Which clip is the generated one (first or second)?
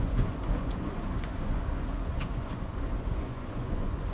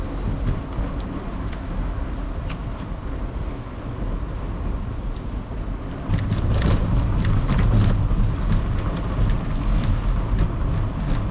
first